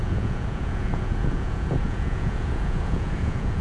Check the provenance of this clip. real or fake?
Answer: fake